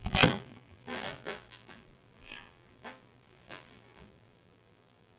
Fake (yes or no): yes